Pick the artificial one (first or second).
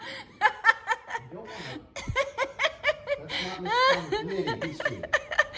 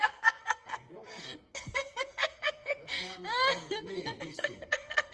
second